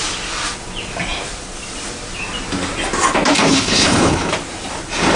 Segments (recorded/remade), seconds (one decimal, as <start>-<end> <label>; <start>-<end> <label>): 0.0-3.5 recorded; 3.5-4.3 remade; 4.3-5.2 recorded